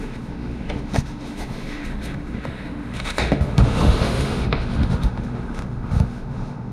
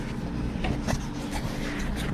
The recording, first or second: second